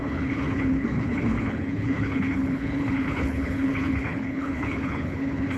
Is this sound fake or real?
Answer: fake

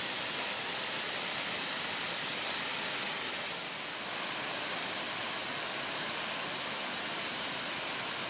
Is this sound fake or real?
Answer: real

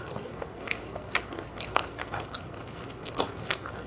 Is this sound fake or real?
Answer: fake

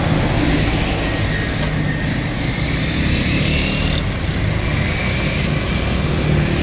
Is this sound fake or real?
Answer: real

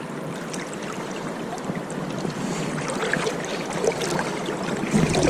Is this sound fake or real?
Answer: fake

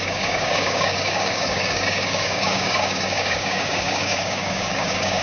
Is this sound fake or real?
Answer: fake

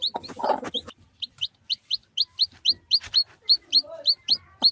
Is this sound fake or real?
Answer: real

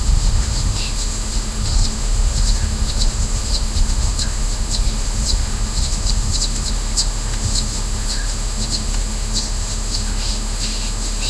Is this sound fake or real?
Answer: fake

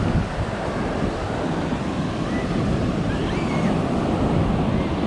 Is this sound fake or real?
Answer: real